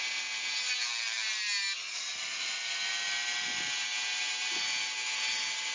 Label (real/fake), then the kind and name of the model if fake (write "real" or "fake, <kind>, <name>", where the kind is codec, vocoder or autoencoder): real